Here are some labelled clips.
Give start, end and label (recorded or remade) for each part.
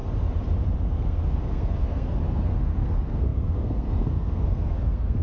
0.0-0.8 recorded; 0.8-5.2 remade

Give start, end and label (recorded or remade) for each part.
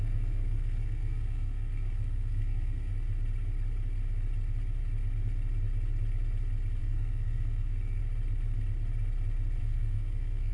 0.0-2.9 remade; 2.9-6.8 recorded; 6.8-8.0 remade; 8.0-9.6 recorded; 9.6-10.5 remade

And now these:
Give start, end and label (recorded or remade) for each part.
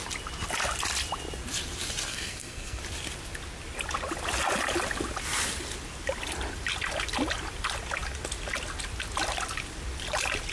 0.0-2.1 recorded; 2.1-2.8 remade; 2.8-10.5 recorded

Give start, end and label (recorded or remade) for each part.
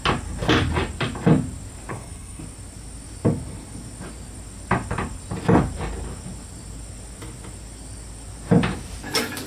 0.0-1.9 recorded; 1.9-2.4 remade; 2.4-9.5 recorded